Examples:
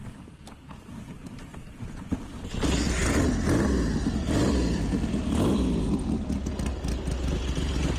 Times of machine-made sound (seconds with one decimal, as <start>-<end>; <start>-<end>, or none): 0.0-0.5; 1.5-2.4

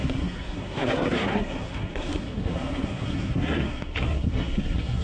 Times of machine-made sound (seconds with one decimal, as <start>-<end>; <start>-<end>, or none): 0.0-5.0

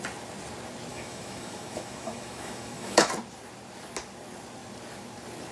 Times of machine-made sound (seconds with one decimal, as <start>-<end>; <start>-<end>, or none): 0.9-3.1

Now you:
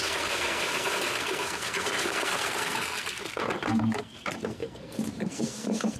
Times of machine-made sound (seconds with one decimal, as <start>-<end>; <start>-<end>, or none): 0.0-6.0

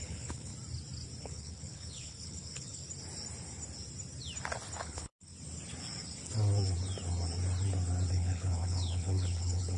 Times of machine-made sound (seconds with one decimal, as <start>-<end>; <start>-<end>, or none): 0.0-0.5; 1.2-2.8; 4.8-5.3; 8.1-9.8

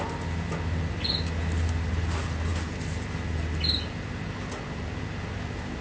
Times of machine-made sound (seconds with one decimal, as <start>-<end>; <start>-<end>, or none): none

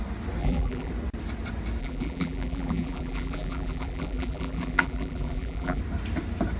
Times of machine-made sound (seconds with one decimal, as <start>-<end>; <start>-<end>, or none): 0.4-0.9; 1.8-5.8